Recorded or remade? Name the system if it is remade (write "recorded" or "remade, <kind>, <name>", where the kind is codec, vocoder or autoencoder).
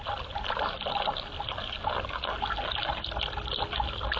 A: recorded